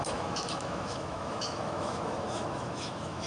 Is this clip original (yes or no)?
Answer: no